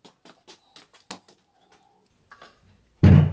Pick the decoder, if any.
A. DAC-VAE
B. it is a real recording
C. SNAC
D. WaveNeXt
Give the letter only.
B